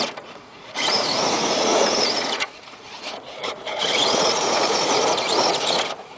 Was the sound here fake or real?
fake